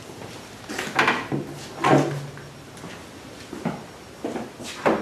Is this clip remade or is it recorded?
recorded